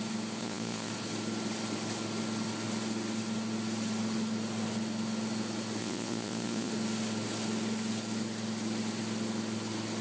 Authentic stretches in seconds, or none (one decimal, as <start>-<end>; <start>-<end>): 0.0-0.4; 0.9-5.8; 6.7-10.0